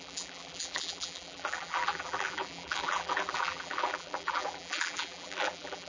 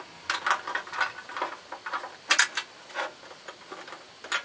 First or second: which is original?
second